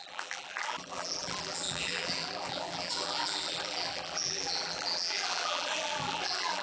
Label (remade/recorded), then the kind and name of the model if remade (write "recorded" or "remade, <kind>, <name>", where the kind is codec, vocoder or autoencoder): remade, vocoder, BigVGAN v2